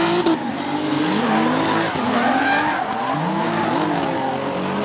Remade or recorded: recorded